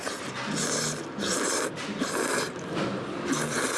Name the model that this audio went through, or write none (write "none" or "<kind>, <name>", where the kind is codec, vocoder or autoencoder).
none